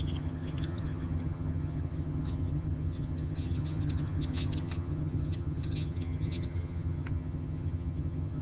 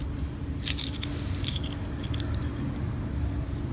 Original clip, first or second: second